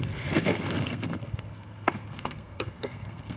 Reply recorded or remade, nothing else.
remade